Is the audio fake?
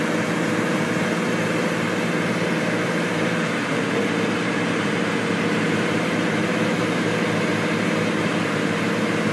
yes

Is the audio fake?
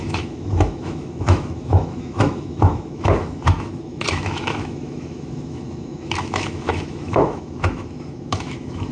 yes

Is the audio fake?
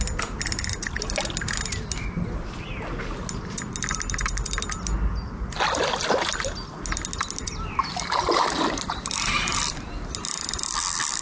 no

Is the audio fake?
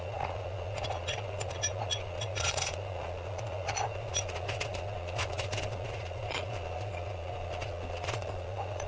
yes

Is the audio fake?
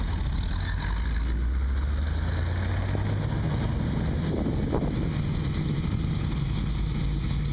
no